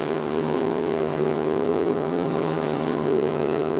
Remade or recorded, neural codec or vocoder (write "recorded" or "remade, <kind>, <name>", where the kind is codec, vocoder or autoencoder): remade, vocoder, HiFi-GAN